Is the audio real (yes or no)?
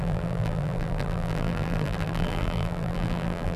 no